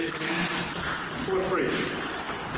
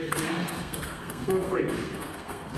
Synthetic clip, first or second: second